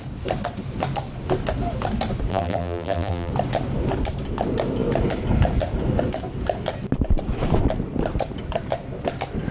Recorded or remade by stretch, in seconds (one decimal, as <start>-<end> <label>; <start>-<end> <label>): 0.0-2.3 recorded; 2.3-3.3 remade; 3.3-9.5 recorded